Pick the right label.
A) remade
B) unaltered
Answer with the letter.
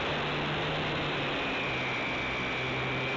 B